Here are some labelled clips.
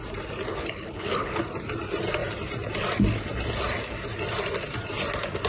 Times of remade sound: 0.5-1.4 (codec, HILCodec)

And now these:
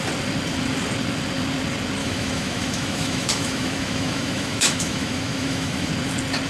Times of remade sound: 2.0-5.9 (autoencoder, DAC-VAE)

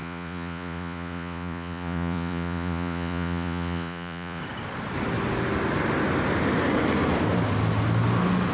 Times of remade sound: 0.0-4.4 (vocoder, Vocos)

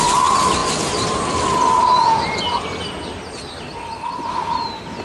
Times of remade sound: none